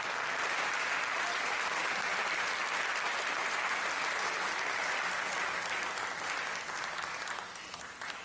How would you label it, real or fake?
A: real